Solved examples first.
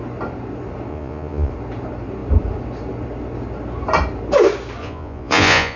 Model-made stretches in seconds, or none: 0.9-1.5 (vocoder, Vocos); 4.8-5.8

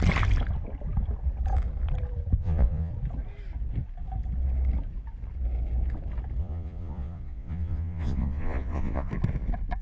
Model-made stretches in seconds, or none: 2.4-2.9 (vocoder, Vocos); 6.4-9.1

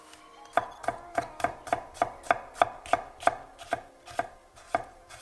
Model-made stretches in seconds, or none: 0.8-1.3 (vocoder, Vocos); 4.4-5.2

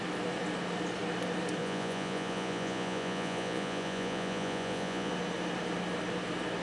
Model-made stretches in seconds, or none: 1.6-5.1 (vocoder, Vocos)

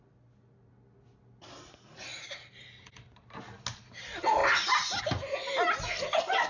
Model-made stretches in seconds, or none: none

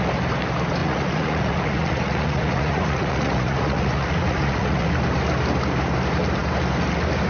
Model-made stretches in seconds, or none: 0.8-4.9 (vocoder, Vocos)

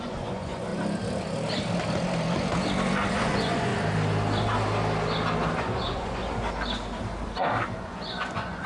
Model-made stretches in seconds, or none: 0.0-0.7 (vocoder, Vocos); 3.1-3.7; 5.6-6.2; 7.8-8.7